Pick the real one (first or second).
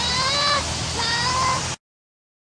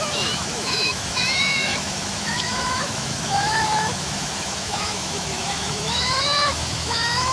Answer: first